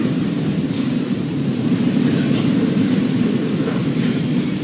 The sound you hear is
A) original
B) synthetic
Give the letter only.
B